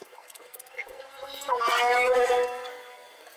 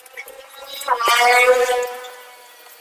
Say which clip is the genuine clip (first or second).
second